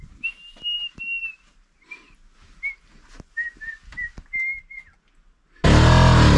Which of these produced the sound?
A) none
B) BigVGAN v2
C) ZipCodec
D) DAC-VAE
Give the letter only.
A